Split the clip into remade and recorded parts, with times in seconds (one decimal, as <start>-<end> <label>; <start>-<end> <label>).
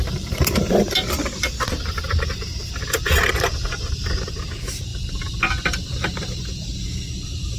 0.0-7.6 recorded